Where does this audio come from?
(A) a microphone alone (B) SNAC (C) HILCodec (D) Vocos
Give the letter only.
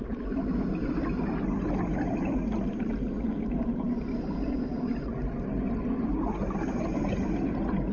A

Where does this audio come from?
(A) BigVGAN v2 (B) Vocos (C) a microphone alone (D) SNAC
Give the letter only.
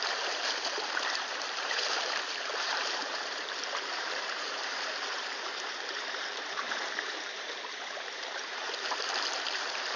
A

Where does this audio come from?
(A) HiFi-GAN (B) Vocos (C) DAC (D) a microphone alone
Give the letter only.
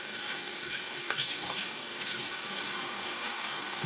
C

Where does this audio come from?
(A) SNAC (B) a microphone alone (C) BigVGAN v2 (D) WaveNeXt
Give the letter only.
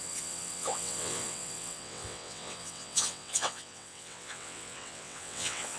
D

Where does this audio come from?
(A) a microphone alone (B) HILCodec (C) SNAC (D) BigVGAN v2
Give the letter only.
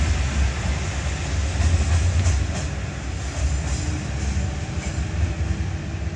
A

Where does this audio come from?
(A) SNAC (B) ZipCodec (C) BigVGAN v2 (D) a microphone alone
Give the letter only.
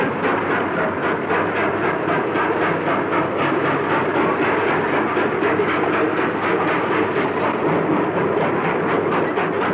D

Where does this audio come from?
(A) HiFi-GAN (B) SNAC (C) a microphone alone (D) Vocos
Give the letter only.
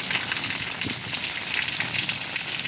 C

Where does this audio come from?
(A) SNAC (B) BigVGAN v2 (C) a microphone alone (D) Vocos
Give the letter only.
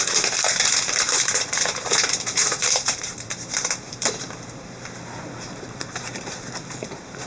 B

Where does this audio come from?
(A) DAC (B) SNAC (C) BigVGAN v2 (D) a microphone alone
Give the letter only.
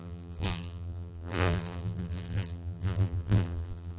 C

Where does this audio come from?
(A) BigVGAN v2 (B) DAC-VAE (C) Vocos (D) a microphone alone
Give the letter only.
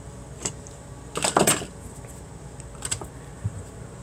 D